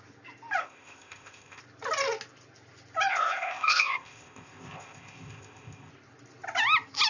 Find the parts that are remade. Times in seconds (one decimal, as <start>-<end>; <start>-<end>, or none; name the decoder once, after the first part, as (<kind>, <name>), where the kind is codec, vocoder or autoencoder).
0.6-1.6 (codec, ZipCodec); 3.1-5.9